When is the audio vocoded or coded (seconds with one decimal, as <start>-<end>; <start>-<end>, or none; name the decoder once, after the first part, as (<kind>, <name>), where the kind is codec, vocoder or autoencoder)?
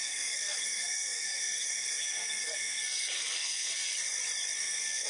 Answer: 0.0-3.9 (codec, SNAC); 4.6-5.1